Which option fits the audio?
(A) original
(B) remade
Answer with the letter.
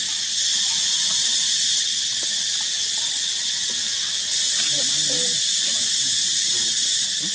A